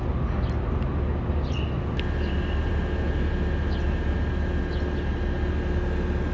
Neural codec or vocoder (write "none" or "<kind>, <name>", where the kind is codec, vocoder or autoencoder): none